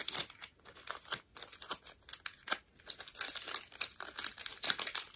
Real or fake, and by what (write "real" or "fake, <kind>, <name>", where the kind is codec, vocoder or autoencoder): real